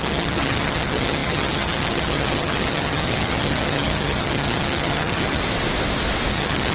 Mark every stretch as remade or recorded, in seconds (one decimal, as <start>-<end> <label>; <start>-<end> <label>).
0.0-5.4 remade; 5.4-6.3 recorded; 6.3-6.7 remade